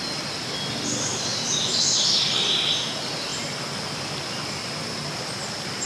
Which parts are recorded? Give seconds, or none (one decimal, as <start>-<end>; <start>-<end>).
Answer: 0.0-5.9